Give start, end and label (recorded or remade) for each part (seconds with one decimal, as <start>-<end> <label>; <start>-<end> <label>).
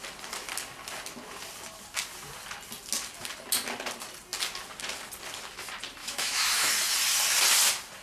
0.0-6.0 recorded; 6.0-6.7 remade; 6.7-8.0 recorded